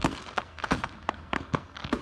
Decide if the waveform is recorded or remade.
remade